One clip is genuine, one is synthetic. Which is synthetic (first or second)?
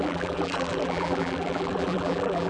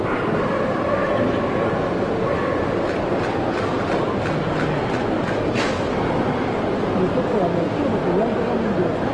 first